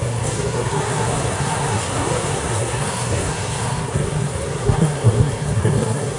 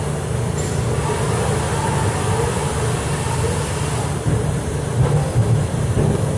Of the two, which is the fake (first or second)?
first